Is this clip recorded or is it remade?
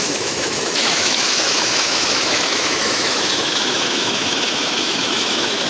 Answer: remade